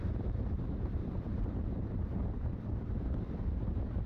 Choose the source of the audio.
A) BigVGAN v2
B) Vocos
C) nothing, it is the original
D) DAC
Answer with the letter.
A